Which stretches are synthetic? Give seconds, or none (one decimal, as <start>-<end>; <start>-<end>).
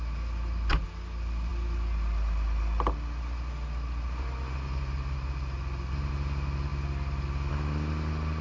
none